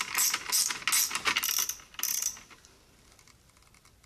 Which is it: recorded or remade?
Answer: recorded